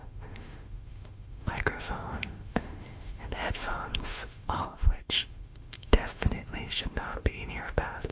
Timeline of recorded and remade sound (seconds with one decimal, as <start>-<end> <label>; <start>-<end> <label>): 0.0-8.1 remade